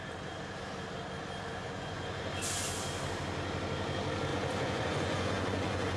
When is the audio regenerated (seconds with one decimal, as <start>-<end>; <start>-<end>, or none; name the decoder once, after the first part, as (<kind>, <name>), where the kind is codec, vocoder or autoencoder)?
1.5-2.2 (vocoder, Vocos); 4.3-6.0